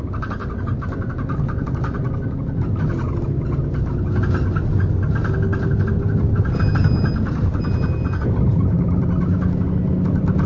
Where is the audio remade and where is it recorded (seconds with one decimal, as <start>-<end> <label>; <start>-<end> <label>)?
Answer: 0.0-10.5 recorded